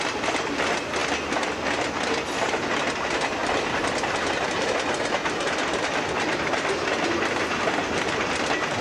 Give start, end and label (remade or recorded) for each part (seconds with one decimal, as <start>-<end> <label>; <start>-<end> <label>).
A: 0.0-8.8 recorded